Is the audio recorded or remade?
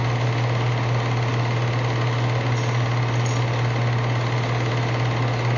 recorded